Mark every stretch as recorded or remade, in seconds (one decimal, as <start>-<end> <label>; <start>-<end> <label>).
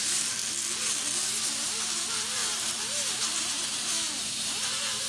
0.0-0.4 remade; 0.4-1.5 recorded; 1.5-5.1 remade